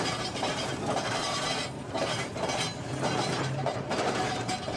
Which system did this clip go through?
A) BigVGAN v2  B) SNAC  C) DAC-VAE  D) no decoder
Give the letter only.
A